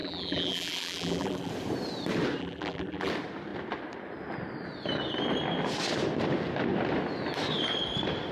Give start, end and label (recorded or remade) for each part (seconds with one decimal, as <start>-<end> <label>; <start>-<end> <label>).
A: 0.0-1.5 remade; 1.5-2.4 recorded; 2.4-3.1 remade; 3.1-8.3 recorded